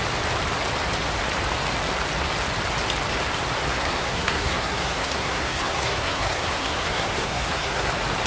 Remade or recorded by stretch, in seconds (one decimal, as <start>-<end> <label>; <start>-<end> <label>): 0.0-3.7 recorded; 3.7-7.9 remade; 7.9-8.3 recorded